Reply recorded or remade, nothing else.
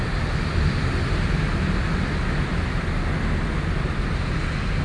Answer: recorded